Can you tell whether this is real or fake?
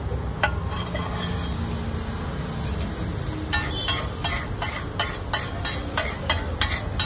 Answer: real